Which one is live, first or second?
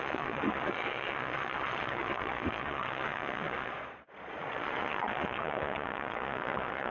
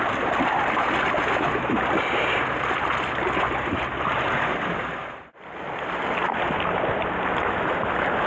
second